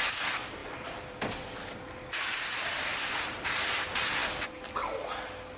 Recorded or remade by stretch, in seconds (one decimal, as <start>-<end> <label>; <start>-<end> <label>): 0.0-0.6 recorded; 0.6-1.4 remade; 1.4-2.8 recorded; 2.8-3.5 remade; 3.5-5.6 recorded